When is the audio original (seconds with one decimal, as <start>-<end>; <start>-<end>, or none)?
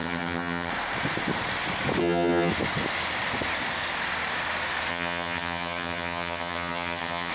0.7-2.0; 2.5-4.9